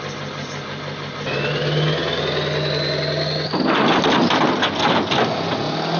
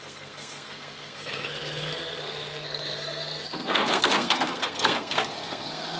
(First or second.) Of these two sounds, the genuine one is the first